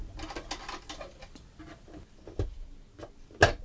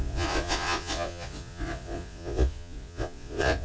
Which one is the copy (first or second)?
second